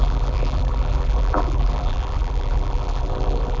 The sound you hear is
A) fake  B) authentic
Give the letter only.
A